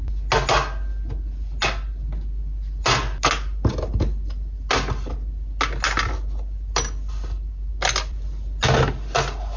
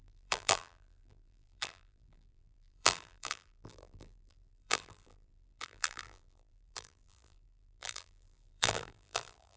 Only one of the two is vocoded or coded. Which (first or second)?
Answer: second